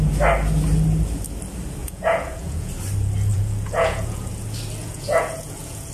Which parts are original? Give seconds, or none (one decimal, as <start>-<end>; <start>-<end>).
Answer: 0.0-1.8; 2.7-3.3; 4.3-4.8